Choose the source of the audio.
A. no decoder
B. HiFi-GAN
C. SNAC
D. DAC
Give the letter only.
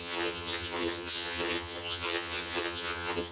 B